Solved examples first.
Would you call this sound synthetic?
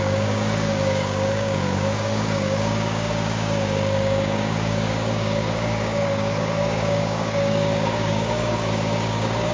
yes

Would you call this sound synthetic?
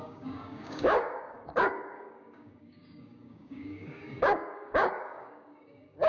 yes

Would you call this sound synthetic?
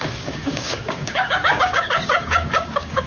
yes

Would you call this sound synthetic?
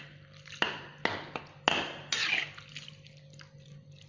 no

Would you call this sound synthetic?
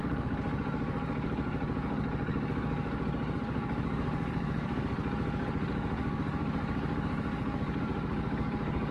yes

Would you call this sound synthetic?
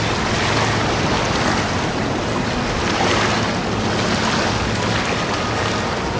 no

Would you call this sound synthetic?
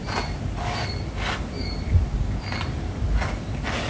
no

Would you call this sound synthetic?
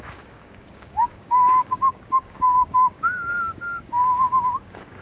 yes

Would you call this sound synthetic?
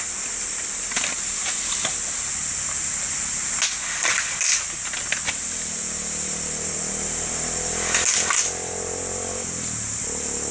no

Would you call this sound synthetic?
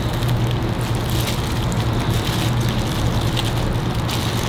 no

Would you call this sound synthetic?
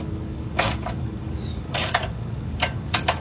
yes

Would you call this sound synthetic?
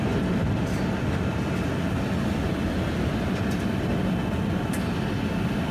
no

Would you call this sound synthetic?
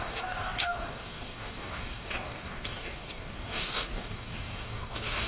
yes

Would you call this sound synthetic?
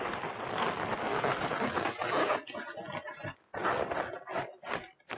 no